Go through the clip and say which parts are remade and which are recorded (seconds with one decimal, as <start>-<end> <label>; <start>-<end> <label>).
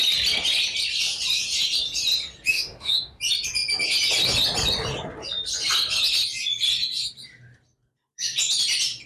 0.0-2.5 recorded; 2.5-3.2 remade; 3.2-9.1 recorded